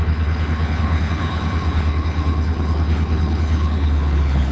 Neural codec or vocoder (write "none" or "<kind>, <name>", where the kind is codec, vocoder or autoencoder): codec, HILCodec